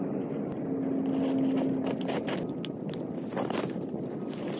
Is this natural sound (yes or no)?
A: yes